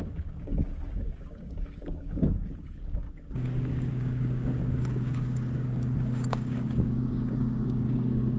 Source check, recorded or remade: remade